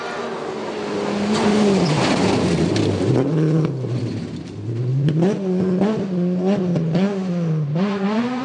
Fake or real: real